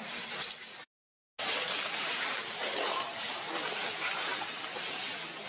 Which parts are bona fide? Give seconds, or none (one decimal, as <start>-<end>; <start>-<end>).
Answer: 0.0-5.5